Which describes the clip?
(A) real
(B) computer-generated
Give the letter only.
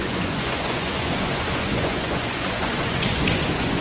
B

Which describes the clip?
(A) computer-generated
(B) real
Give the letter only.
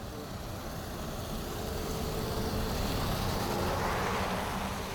B